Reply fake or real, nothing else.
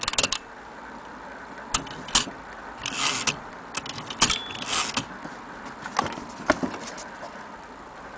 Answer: real